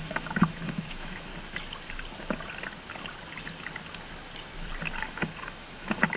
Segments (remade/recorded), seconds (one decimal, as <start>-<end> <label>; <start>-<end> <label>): 0.0-1.3 remade; 1.3-5.0 recorded; 5.0-6.2 remade

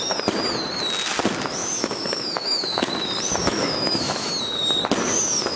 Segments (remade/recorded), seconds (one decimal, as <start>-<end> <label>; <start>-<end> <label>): 0.0-1.6 recorded; 1.6-2.9 remade; 2.9-3.4 recorded; 3.4-4.3 remade; 4.3-5.6 recorded

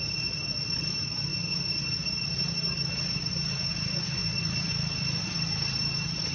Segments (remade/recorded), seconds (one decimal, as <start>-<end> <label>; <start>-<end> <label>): 0.0-6.3 recorded

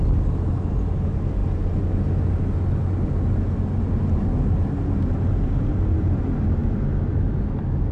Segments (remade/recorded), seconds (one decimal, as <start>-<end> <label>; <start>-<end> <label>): 0.0-7.9 recorded

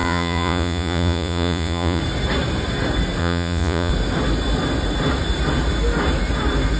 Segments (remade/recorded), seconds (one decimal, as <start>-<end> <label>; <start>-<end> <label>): 0.0-2.0 remade; 2.0-3.2 recorded; 3.2-3.9 remade; 3.9-6.8 recorded

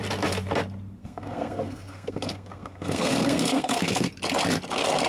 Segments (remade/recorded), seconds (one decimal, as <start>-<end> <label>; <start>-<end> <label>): 0.0-1.0 recorded; 1.0-4.1 remade; 4.1-5.1 recorded